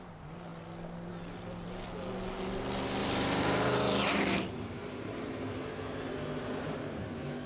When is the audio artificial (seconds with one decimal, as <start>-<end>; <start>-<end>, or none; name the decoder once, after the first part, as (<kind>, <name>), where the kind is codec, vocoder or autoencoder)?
3.0-5.7 (vocoder, BigVGAN v2)